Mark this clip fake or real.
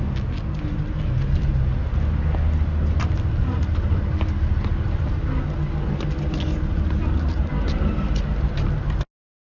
real